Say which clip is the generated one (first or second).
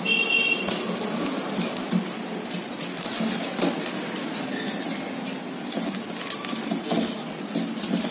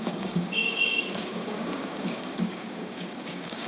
second